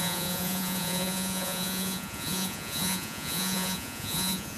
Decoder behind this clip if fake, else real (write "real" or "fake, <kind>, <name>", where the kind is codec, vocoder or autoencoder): fake, vocoder, Vocos